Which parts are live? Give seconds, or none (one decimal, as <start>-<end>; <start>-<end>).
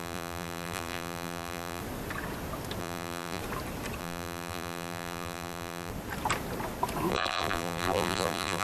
1.8-2.8; 3.4-4.0; 5.9-7.1